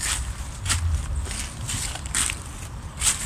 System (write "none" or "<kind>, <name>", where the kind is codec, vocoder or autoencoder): none